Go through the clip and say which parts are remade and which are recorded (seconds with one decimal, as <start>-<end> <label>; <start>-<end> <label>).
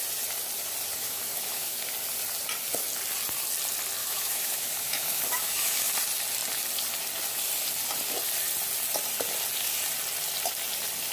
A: 0.0-1.0 recorded; 1.0-1.8 remade; 1.8-4.0 recorded; 4.0-5.9 remade; 5.9-11.1 recorded